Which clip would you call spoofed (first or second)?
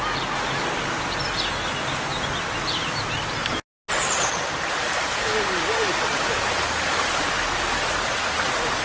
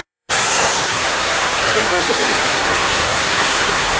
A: second